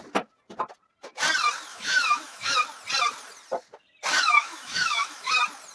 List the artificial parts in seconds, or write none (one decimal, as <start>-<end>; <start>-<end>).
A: 1.7-2.6; 4.1-5.3